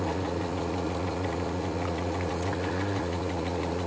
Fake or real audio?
fake